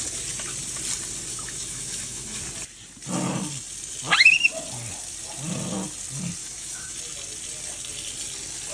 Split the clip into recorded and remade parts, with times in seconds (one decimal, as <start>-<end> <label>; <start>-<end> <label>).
0.0-1.3 recorded; 1.3-2.4 remade; 2.4-6.4 recorded; 6.4-7.0 remade; 7.0-8.7 recorded